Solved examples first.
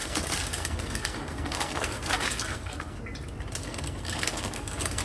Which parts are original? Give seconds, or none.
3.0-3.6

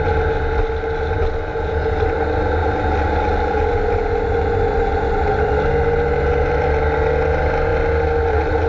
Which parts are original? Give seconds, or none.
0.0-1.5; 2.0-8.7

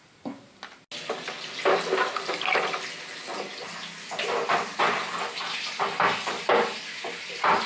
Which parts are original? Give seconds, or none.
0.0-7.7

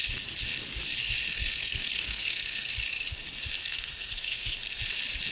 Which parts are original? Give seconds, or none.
0.0-1.3; 2.7-3.6; 4.6-5.3

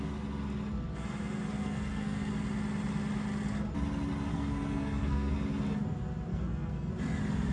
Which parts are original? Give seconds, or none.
0.0-1.6; 2.3-4.3; 5.3-6.3; 6.9-7.5